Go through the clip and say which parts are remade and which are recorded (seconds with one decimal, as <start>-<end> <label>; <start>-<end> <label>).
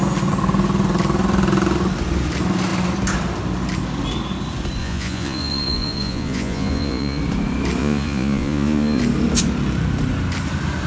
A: 0.0-4.8 recorded; 4.8-7.2 remade; 7.2-7.8 recorded; 7.8-9.0 remade; 9.0-10.9 recorded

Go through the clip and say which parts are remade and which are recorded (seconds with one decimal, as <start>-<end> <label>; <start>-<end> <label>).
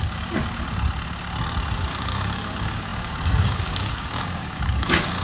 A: 0.0-0.4 remade; 0.4-1.9 recorded; 1.9-5.2 remade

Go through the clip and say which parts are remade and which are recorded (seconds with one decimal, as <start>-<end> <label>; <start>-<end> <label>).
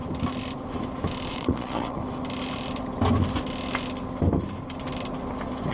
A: 0.0-1.3 recorded; 1.3-2.0 remade; 2.0-5.7 recorded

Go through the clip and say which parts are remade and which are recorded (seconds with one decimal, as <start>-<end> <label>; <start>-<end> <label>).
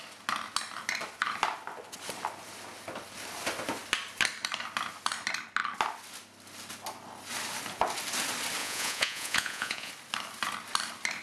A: 0.0-8.6 recorded; 8.6-9.9 remade; 9.9-11.2 recorded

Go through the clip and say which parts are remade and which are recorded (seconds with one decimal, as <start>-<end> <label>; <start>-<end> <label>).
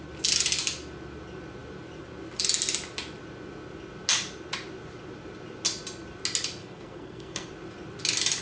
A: 0.0-6.6 recorded; 6.6-7.5 remade; 7.5-8.4 recorded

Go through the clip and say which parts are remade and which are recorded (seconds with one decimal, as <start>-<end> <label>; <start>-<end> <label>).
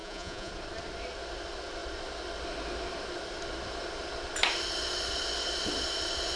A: 0.0-0.5 remade; 0.5-6.4 recorded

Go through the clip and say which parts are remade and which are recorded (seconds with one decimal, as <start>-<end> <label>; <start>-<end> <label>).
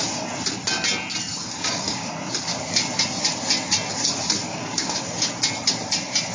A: 0.0-1.4 recorded; 1.4-2.1 remade; 2.1-4.5 recorded; 4.5-5.3 remade; 5.3-6.3 recorded